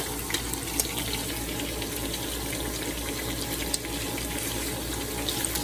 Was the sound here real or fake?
real